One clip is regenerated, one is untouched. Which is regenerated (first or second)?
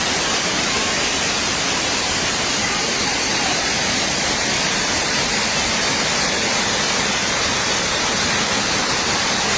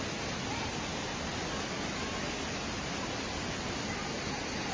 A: first